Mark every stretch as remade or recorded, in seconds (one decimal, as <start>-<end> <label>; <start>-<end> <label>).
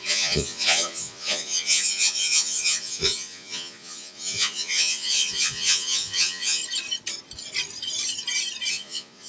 0.0-6.6 remade; 6.6-8.7 recorded; 8.7-9.3 remade